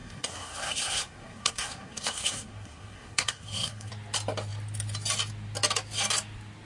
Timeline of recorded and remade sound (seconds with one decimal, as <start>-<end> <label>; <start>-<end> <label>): 0.0-3.9 remade; 3.9-6.6 recorded